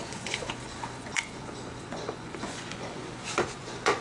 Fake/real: fake